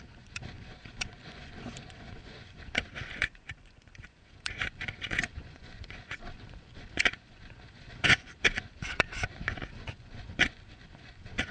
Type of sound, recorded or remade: remade